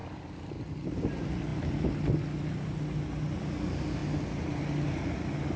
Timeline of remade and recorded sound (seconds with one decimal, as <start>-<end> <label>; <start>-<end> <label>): 0.0-5.6 recorded